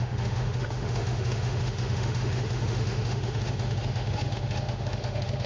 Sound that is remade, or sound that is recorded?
remade